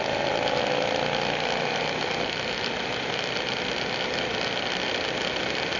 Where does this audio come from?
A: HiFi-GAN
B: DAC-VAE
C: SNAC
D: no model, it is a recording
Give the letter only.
D